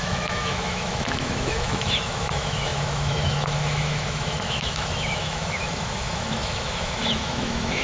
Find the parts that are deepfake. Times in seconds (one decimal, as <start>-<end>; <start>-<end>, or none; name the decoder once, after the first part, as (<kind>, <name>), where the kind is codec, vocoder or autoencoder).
0.0-7.8 (autoencoder, DAC-VAE)